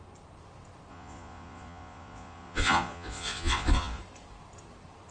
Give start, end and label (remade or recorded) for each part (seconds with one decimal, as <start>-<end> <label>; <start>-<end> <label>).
0.0-0.9 recorded; 0.9-4.0 remade; 4.0-5.1 recorded